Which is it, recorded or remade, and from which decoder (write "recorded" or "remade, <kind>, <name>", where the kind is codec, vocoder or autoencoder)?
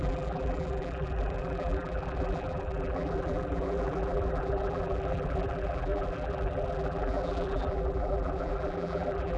remade, vocoder, BigVGAN v2